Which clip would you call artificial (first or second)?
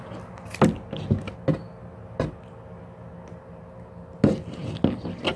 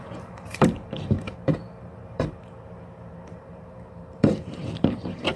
second